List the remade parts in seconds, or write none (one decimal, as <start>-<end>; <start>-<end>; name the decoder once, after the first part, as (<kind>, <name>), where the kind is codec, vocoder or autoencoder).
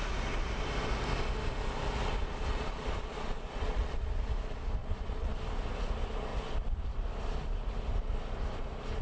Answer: 2.2-4.1 (vocoder, Vocos); 4.8-5.3